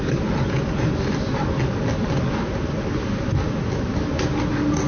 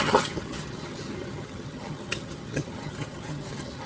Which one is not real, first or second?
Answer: second